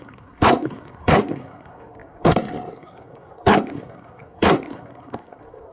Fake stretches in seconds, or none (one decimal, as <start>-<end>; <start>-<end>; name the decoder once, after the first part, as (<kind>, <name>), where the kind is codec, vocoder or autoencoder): 0.0-5.7 (codec, SNAC)